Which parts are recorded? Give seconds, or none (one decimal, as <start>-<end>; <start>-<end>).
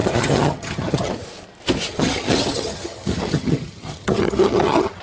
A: 1.1-1.9